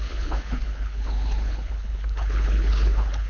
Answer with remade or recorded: remade